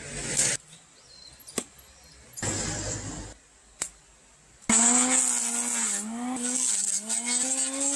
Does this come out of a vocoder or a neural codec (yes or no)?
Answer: no